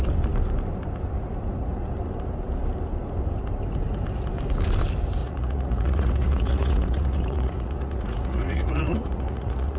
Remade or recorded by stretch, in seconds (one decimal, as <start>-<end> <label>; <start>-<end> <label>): 0.0-5.2 recorded; 5.2-9.8 remade